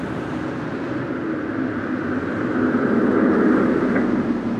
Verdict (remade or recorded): recorded